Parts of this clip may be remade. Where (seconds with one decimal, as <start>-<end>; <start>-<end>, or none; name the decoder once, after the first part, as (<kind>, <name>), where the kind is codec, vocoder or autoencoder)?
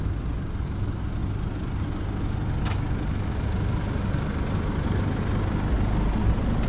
none